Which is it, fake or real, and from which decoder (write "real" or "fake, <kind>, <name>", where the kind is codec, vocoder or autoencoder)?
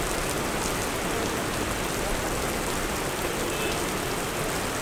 real